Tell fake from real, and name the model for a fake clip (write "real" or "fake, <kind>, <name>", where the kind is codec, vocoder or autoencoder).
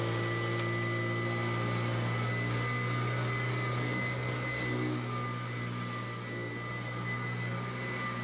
real